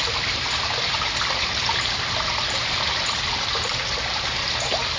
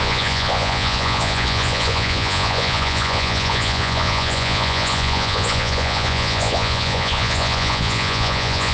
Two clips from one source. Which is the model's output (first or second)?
second